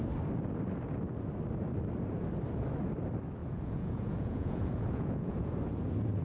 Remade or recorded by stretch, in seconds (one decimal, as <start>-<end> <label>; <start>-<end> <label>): 0.0-3.4 recorded; 3.4-5.5 remade; 5.5-6.2 recorded